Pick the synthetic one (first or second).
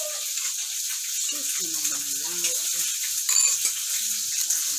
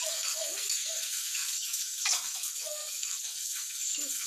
second